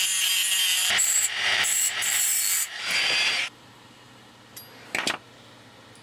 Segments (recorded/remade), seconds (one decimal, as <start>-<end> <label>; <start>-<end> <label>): 0.0-0.7 recorded; 0.7-4.3 remade; 4.3-6.0 recorded